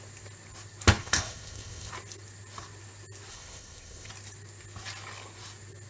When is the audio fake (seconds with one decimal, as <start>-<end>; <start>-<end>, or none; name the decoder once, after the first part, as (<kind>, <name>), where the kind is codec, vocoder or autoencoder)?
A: 1.0-1.9 (codec, ZipCodec); 3.3-4.1